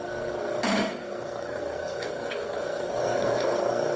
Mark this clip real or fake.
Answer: fake